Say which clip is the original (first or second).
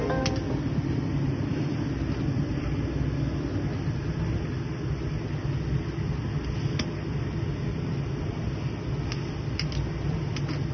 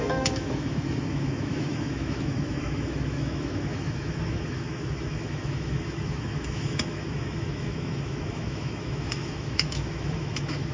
first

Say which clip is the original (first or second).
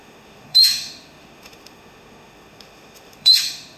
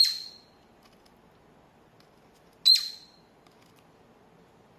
second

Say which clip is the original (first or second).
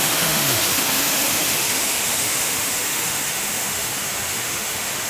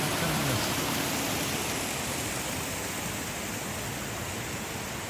second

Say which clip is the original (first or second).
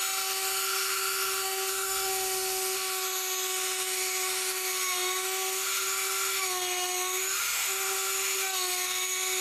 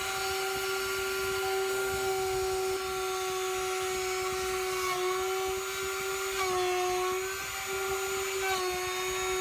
second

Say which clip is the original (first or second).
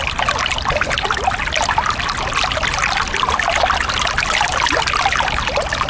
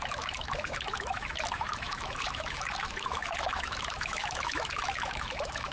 first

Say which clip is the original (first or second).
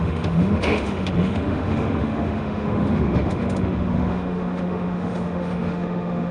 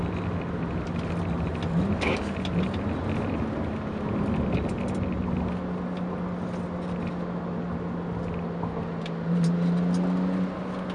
second